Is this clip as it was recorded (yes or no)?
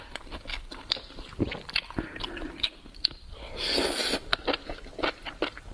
yes